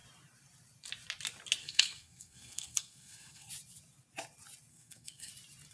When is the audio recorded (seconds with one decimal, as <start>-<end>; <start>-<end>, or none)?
0.0-1.6; 3.5-4.7; 5.3-5.7